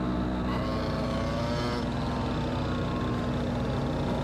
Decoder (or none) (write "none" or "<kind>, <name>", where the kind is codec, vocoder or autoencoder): none